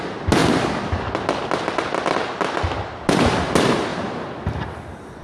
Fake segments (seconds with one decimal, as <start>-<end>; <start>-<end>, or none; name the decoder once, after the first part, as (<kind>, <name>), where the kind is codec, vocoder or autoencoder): 3.9-4.8 (vocoder, BigVGAN v2)